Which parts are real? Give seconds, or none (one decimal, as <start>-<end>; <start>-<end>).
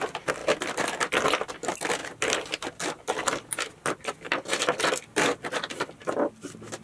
0.0-6.8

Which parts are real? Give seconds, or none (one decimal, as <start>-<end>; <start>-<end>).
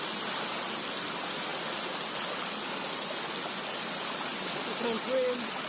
0.0-5.7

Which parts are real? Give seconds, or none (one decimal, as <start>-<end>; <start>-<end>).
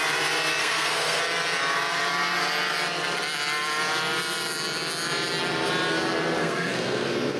0.0-0.6; 1.2-6.4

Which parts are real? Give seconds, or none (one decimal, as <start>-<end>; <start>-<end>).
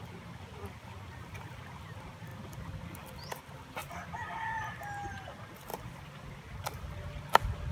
0.0-2.3; 3.4-3.8; 4.8-5.7; 6.4-7.7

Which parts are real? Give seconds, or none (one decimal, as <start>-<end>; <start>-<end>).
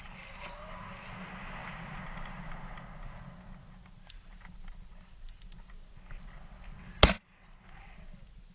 0.0-8.5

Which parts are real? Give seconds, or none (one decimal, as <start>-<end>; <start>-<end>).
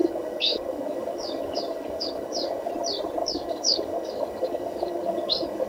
2.7-3.2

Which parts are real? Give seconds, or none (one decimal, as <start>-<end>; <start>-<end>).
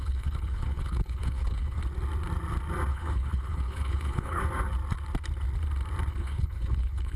1.8-2.9; 4.4-6.1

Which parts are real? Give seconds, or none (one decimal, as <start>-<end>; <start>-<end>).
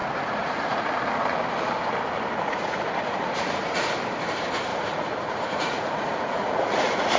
0.9-2.5; 3.9-4.7